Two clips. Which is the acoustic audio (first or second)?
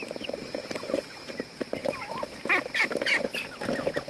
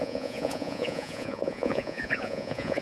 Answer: first